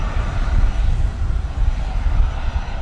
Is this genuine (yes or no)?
yes